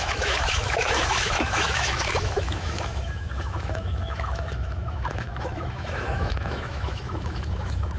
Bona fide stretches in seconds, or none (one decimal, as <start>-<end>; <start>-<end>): none